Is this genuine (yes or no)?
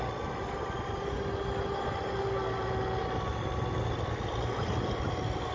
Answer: yes